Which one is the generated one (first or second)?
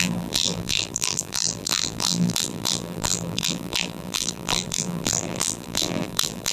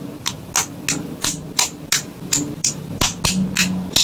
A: first